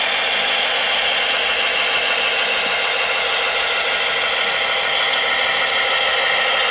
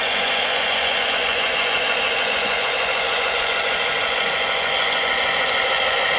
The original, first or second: first